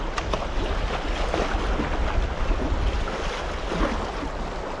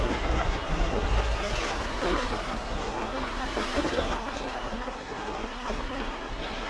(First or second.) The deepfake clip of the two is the second